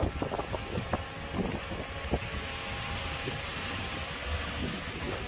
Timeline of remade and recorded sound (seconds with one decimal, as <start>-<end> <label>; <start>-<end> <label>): 0.0-5.3 recorded